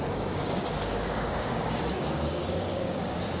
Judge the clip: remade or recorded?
remade